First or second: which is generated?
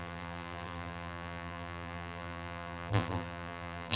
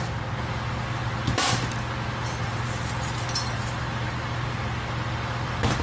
first